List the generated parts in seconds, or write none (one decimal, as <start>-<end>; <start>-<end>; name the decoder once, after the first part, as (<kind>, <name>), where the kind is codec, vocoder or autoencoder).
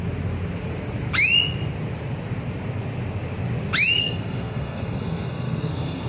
4.0-6.1 (codec, SNAC)